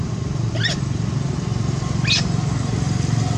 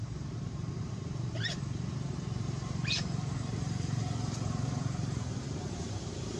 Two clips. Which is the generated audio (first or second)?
second